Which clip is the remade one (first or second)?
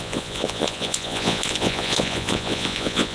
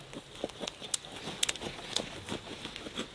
first